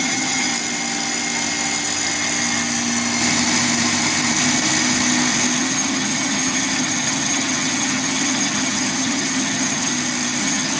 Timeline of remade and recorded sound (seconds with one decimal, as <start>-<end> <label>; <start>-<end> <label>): 0.0-0.5 remade; 0.5-5.6 recorded; 5.6-9.9 remade; 9.9-10.4 recorded; 10.4-10.8 remade